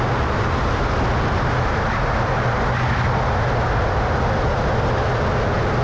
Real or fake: real